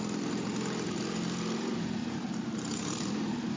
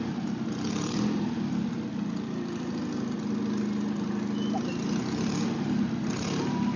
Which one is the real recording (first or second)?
second